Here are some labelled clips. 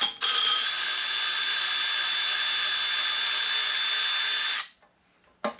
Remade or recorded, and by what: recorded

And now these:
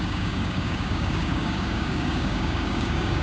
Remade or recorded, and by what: remade, codec, DAC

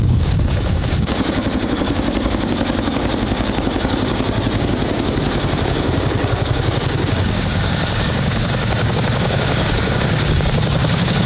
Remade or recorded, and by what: remade, codec, DAC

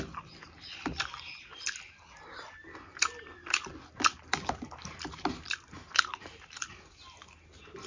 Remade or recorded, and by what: recorded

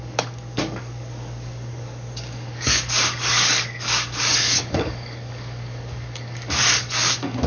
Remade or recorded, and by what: remade, codec, DAC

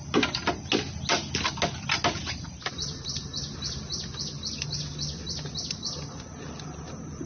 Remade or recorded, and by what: recorded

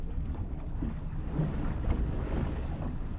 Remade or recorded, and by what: remade, codec, DAC